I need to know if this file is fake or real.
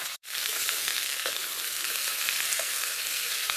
fake